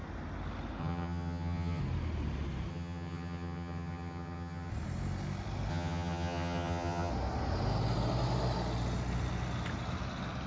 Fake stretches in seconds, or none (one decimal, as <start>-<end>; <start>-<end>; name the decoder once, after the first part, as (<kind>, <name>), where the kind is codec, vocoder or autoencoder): 0.8-1.8 (vocoder, HiFi-GAN); 2.7-4.7; 5.7-7.1